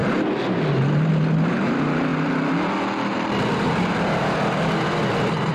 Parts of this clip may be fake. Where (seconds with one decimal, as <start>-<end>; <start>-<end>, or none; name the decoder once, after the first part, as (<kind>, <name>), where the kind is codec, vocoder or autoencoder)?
none